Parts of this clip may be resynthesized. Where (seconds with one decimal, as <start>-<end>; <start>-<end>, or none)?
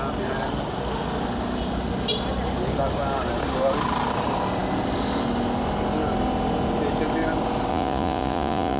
7.7-8.8